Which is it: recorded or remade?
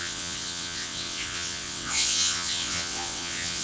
remade